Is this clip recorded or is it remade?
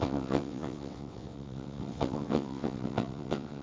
remade